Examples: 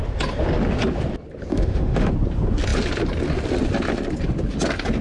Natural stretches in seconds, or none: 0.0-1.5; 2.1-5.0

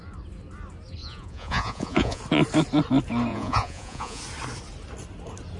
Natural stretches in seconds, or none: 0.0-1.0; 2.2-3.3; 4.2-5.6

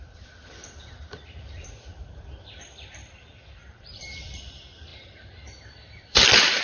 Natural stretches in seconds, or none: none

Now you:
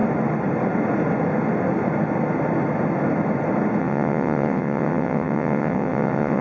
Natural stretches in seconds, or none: 0.0-3.8

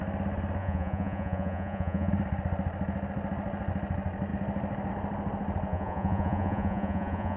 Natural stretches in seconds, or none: 0.0-0.6; 2.1-5.7

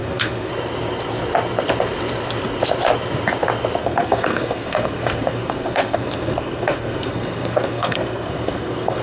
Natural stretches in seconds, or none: 0.5-3.8

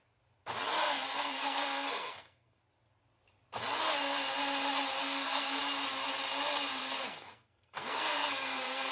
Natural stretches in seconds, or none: 0.0-0.8; 2.6-5.0; 5.6-6.8

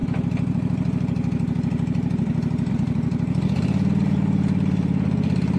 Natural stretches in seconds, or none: 0.0-2.7; 3.1-3.9